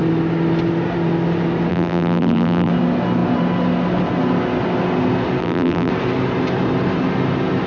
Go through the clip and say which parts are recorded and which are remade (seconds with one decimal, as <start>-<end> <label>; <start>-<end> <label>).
0.0-1.7 recorded; 1.7-2.7 remade; 2.7-5.4 recorded; 5.4-5.9 remade; 5.9-7.7 recorded